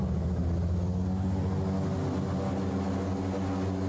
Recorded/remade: recorded